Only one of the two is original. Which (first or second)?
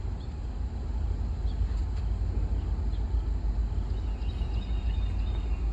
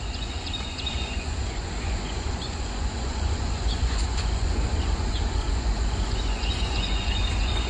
first